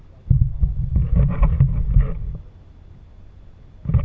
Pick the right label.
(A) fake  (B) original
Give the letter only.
B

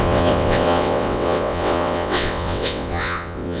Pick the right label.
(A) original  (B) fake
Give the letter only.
B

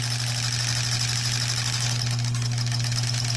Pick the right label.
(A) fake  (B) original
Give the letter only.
B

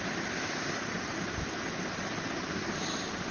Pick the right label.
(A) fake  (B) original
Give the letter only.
B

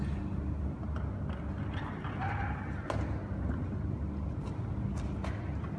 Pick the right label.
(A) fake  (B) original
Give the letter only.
B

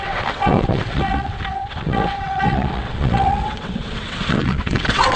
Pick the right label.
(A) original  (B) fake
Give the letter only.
B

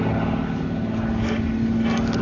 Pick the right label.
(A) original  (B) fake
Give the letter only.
A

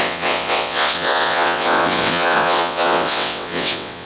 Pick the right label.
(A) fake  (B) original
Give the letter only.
A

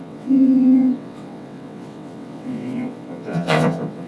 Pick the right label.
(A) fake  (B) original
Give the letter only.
A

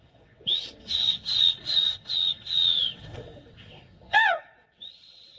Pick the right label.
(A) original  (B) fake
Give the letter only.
B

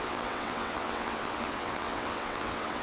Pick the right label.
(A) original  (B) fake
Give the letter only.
B